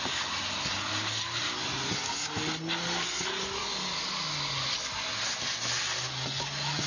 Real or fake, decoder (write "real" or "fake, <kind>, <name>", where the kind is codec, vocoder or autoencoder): real